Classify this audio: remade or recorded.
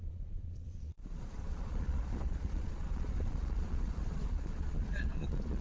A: remade